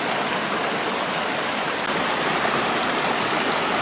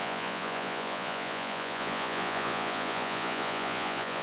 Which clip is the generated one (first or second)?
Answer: second